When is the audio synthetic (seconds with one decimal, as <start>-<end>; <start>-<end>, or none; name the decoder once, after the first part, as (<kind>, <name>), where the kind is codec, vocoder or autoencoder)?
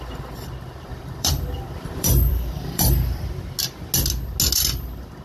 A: 0.9-3.2 (vocoder, BigVGAN v2)